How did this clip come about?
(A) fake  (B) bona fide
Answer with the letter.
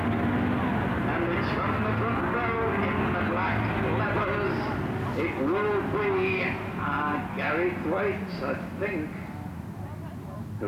B